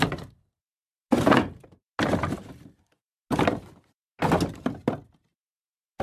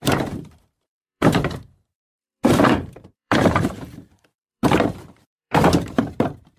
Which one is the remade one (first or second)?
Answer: second